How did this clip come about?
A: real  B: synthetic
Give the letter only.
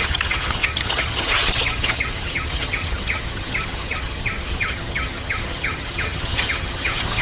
B